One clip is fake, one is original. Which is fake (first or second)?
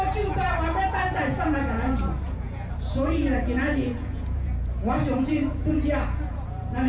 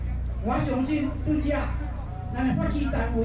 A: first